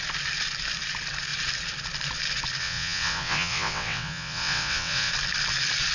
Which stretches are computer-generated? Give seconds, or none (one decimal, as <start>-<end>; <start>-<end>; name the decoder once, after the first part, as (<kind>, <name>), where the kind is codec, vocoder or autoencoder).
2.6-5.1 (vocoder, WaveNeXt)